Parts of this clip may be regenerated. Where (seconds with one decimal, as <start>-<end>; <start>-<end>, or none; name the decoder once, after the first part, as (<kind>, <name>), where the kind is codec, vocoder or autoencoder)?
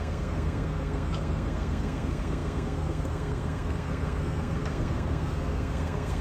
0.0-6.2 (codec, SNAC)